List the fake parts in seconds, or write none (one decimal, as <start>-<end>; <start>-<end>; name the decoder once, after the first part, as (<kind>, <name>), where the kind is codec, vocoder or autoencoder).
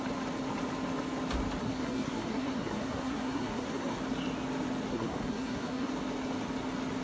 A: 1.6-4.0 (codec, SNAC); 4.9-5.9